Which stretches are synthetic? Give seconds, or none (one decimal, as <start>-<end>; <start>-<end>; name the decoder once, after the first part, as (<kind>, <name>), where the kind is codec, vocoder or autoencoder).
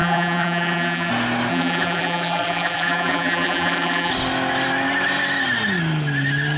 0.0-1.1 (vocoder, BigVGAN v2); 1.5-4.1